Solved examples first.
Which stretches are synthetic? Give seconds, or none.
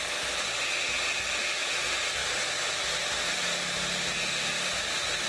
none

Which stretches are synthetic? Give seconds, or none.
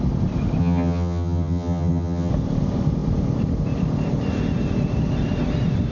0.6-2.3 (vocoder, HiFi-GAN)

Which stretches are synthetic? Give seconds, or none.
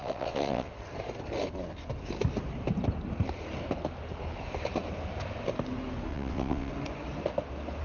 0.0-0.7 (vocoder, WaveNeXt); 6.1-6.7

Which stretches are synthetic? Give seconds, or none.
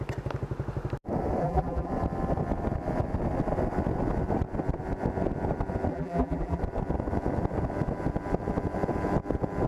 1.4-1.9 (vocoder, BigVGAN v2); 5.9-6.6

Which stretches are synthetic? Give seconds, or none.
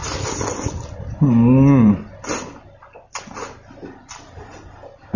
none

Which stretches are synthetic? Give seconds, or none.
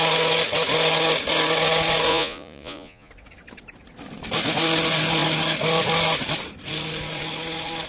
2.1-3.1 (vocoder, Vocos)